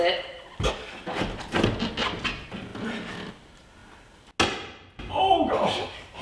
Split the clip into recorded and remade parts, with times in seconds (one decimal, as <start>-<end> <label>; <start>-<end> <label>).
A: 0.0-6.2 recorded